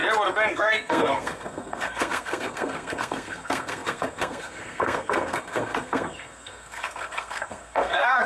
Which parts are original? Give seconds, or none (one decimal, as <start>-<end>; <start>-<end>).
0.0-0.5